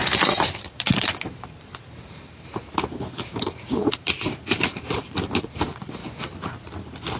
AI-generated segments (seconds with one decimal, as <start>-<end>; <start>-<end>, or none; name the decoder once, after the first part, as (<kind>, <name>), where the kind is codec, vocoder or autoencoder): 0.0-6.0 (vocoder, BigVGAN v2); 6.8-7.2